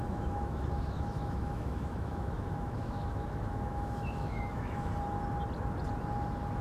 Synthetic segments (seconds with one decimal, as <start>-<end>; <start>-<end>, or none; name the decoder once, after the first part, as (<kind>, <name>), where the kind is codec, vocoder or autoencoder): 0.0-4.9 (autoencoder, DAC-VAE)